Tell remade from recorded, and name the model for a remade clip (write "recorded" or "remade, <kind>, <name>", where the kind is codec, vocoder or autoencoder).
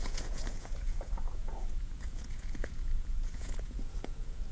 remade, vocoder, Vocos